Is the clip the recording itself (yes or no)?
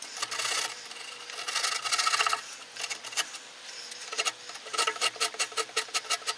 yes